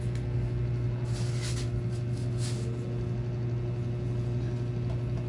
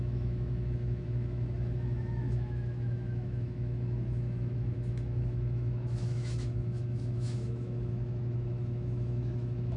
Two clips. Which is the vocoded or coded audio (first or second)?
second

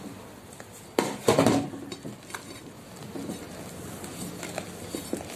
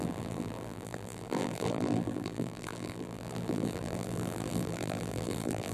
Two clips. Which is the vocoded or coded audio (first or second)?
second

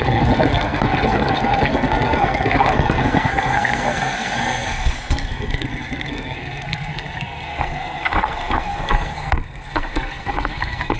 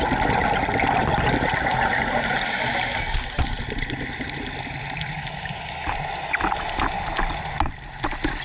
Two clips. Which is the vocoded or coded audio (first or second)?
first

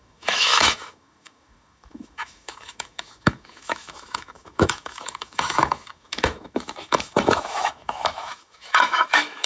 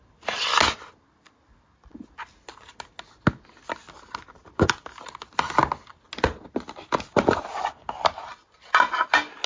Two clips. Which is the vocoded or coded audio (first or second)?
first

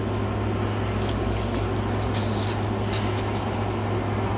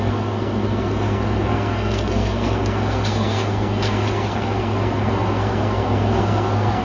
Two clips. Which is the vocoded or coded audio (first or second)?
second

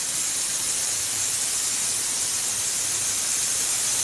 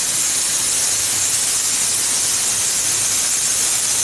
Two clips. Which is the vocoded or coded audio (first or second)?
first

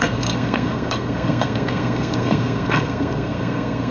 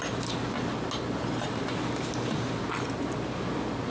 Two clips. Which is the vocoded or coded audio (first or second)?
first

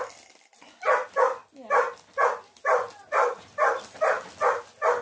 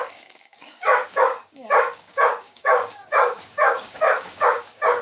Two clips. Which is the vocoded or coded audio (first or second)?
second